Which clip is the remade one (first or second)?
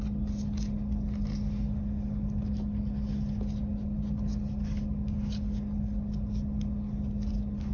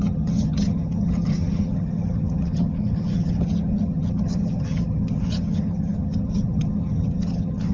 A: second